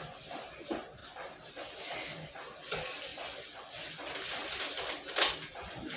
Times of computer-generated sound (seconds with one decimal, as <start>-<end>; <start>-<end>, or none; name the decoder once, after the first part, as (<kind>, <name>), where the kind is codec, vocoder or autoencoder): none

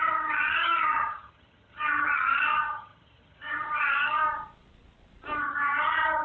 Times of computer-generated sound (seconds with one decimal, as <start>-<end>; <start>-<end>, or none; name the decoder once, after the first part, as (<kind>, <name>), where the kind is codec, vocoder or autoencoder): 0.0-4.2 (vocoder, HiFi-GAN); 5.4-6.2

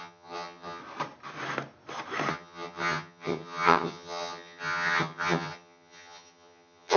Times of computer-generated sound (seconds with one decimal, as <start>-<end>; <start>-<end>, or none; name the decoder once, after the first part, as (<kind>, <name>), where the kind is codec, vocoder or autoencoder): 0.0-0.8 (vocoder, HiFi-GAN); 2.3-7.0

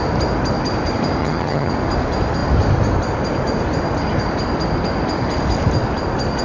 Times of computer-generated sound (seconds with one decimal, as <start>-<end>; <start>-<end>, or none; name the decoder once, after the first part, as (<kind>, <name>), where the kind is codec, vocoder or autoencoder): 1.2-1.7 (vocoder, HiFi-GAN)

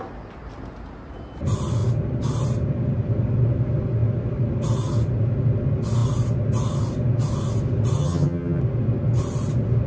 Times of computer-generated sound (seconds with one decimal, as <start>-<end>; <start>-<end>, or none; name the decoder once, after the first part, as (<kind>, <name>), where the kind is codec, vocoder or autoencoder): 8.0-8.6 (vocoder, HiFi-GAN)

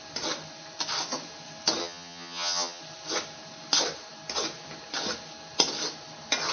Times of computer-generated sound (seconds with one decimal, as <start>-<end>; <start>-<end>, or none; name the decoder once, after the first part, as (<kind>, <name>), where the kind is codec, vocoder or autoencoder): 1.8-2.8 (vocoder, HiFi-GAN)

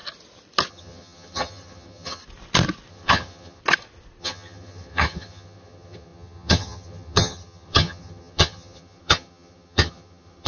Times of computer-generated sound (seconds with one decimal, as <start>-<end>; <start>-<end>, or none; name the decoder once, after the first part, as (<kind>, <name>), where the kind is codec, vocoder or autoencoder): 0.7-2.2 (vocoder, HiFi-GAN); 2.9-3.6; 4.2-10.5